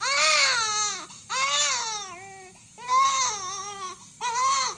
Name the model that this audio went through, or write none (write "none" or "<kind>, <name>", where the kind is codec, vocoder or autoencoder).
none